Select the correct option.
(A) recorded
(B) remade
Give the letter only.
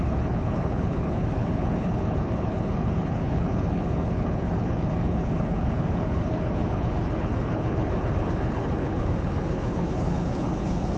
B